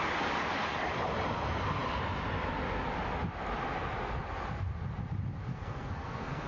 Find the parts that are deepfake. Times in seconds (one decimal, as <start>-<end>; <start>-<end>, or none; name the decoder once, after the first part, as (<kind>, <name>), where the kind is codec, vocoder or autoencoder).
5.5-6.5 (codec, SNAC)

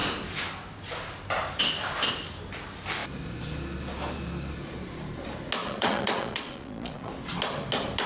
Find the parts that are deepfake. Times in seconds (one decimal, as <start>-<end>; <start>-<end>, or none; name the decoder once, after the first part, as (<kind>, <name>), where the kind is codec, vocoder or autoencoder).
5.6-7.1 (vocoder, Vocos)

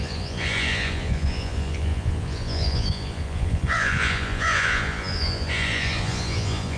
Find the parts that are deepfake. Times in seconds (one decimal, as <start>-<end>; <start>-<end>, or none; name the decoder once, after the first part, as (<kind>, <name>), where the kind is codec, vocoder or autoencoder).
0.0-6.8 (vocoder, Vocos)

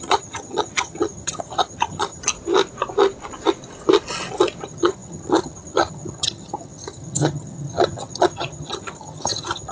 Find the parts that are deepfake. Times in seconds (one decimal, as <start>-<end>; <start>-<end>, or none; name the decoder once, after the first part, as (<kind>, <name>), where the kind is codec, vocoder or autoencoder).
0.0-2.2 (vocoder, HiFi-GAN); 4.6-9.7

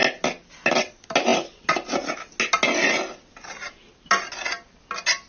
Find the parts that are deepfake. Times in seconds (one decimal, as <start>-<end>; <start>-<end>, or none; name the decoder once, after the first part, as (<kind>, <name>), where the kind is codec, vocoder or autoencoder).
none